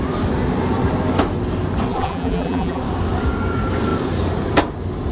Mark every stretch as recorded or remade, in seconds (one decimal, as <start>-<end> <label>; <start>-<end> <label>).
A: 0.0-1.9 recorded; 1.9-2.8 remade; 2.8-5.1 recorded